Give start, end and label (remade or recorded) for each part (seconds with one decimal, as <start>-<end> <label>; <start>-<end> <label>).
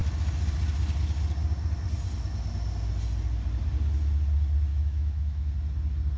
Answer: 0.0-4.7 recorded; 4.7-5.5 remade; 5.5-6.2 recorded